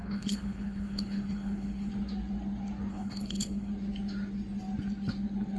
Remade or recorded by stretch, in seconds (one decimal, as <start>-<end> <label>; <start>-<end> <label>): 0.0-1.9 remade; 1.9-2.9 recorded; 2.9-3.7 remade; 3.7-5.6 recorded